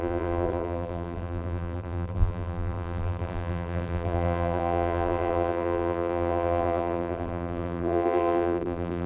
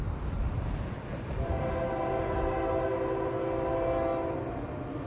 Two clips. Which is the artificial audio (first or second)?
first